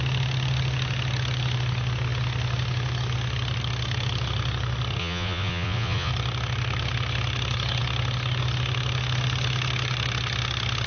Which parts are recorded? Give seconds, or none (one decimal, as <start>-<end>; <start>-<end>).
0.0-5.0; 6.1-10.9